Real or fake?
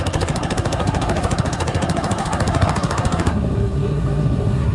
fake